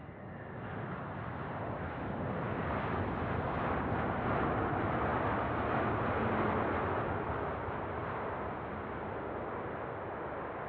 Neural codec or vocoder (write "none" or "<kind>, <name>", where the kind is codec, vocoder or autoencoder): none